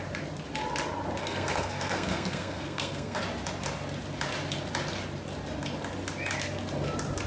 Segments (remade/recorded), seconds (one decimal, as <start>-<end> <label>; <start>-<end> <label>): 0.0-1.2 recorded; 1.2-3.2 remade; 3.2-7.3 recorded